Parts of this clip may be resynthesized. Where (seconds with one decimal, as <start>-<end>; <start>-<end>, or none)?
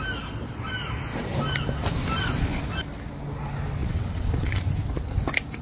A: 3.8-4.6